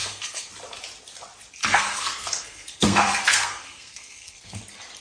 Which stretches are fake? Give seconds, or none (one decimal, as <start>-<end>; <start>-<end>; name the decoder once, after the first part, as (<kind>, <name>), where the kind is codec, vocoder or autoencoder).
0.0-0.5 (codec, SNAC); 1.6-4.6